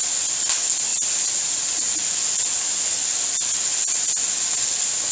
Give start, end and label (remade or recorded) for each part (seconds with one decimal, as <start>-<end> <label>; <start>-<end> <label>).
0.0-5.1 recorded